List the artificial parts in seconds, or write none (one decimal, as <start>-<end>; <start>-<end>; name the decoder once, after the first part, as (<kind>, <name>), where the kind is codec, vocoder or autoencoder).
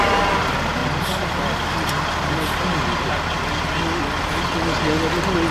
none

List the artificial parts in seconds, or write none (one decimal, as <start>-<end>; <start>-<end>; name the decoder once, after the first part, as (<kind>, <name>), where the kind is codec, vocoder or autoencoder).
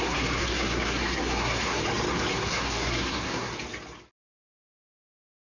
0.0-1.8 (codec, SNAC); 2.3-3.5; 4.1-5.4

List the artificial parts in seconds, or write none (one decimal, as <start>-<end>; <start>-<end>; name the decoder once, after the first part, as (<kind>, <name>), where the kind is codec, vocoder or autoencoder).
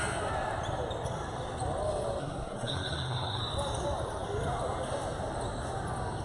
2.2-3.4 (codec, SNAC)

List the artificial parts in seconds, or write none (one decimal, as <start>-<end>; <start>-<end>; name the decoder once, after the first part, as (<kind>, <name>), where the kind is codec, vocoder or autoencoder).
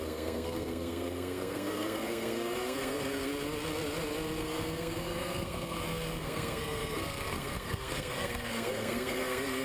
0.0-3.3 (codec, SNAC); 4.4-9.6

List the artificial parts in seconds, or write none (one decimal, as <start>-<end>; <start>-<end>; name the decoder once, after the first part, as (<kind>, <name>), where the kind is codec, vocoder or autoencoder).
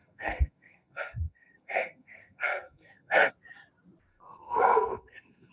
0.0-3.3 (codec, SNAC); 4.1-5.5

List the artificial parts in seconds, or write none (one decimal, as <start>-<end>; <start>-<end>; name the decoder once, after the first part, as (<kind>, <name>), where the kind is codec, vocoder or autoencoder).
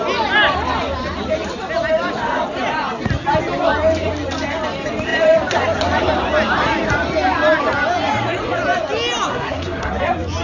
9.3-9.9 (codec, SNAC)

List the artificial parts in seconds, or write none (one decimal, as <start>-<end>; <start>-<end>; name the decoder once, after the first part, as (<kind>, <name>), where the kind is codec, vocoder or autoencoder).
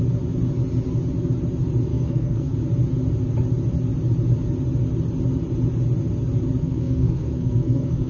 1.9-2.6 (codec, SNAC); 6.6-8.1